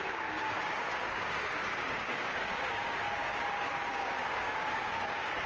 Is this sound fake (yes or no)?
yes